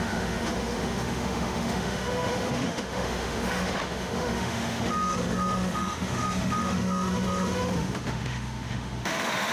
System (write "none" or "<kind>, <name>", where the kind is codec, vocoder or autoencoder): autoencoder, DAC-VAE